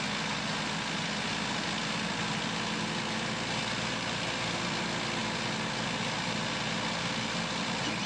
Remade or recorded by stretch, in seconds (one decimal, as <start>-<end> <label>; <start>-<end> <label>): 0.0-8.1 recorded